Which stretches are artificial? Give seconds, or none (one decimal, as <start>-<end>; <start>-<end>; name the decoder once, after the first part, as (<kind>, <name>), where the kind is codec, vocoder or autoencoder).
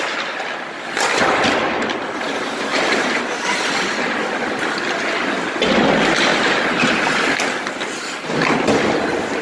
2.7-3.2 (vocoder, BigVGAN v2); 6.3-7.0